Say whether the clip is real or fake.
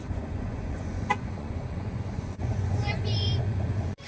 fake